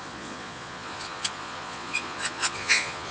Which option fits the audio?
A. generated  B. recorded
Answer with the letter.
A